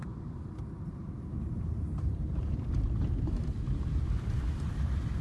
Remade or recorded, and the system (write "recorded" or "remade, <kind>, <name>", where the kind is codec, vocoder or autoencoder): remade, vocoder, BigVGAN v2